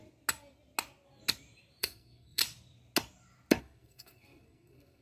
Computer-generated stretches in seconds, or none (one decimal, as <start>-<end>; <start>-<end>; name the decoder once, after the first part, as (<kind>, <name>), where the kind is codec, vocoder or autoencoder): 1.8-2.4 (codec, SNAC); 3.6-5.0